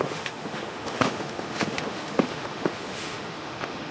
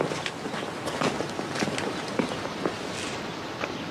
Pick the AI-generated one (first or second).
first